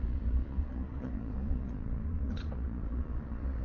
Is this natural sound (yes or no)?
no